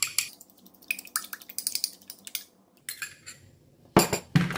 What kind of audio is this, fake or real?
real